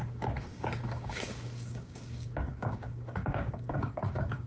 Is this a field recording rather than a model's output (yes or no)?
no